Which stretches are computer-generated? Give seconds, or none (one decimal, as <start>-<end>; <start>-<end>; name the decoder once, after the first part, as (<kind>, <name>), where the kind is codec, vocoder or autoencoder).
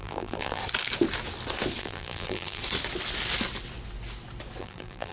0.0-0.6 (vocoder, BigVGAN v2); 1.8-2.6; 4.6-5.1